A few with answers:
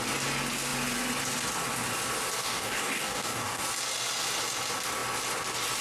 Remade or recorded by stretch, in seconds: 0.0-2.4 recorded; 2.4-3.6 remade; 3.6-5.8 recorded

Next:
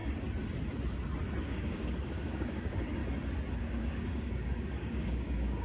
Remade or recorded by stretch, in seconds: 0.0-1.4 recorded; 1.4-3.0 remade; 3.0-3.6 recorded; 3.6-5.6 remade

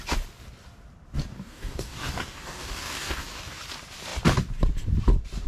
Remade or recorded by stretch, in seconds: 0.0-1.3 recorded; 1.3-3.6 remade; 3.6-5.5 recorded

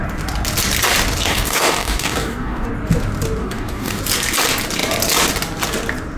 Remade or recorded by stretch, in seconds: 0.0-1.3 recorded; 1.3-2.7 remade; 2.7-3.4 recorded; 3.4-4.0 remade; 4.0-6.2 recorded

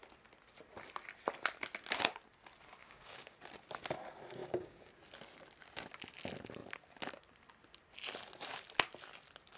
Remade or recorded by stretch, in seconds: 0.0-2.8 recorded; 2.8-3.4 remade; 3.4-4.4 recorded; 4.4-4.9 remade; 4.9-9.6 recorded

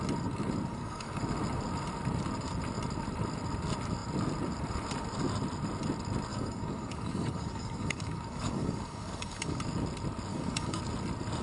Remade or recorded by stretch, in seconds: 0.0-0.7 recorded; 0.7-1.2 remade; 1.2-6.3 recorded; 6.3-9.6 remade; 9.6-10.3 recorded; 10.3-10.8 remade; 10.8-11.4 recorded

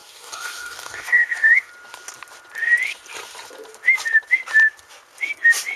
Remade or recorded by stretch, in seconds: 0.0-1.7 remade; 1.7-5.8 recorded